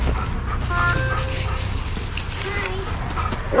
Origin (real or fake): real